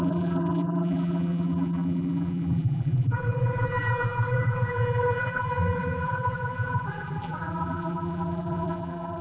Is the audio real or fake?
fake